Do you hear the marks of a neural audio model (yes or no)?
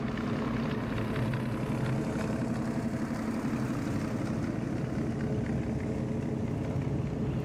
no